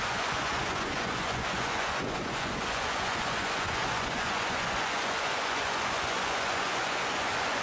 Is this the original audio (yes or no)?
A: no